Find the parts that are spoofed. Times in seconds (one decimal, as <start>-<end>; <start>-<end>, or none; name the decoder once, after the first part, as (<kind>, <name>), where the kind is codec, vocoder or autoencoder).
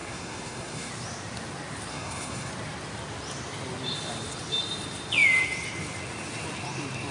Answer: 0.0-0.9 (codec, SNAC); 1.9-2.5